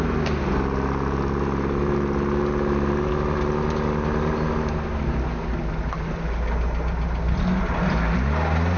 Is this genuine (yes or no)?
yes